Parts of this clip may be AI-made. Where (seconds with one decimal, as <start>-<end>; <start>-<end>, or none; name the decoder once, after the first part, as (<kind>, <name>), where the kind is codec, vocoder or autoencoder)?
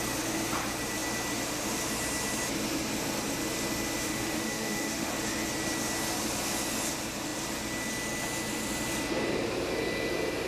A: 4.0-5.1 (autoencoder, DAC-VAE)